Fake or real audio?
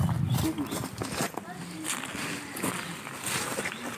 real